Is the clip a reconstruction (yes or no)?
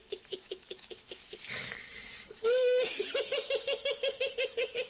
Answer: yes